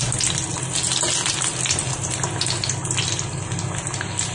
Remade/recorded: recorded